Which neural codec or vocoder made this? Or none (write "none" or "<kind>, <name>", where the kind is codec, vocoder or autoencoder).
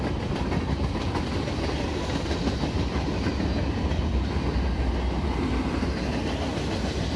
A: none